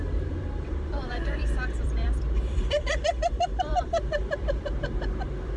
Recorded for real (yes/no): no